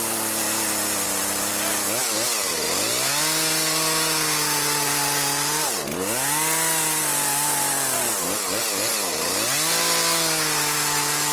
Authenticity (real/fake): real